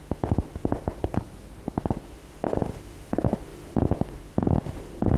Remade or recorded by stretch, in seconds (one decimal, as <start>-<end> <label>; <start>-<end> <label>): 0.0-1.0 remade; 1.0-1.8 recorded; 1.8-5.2 remade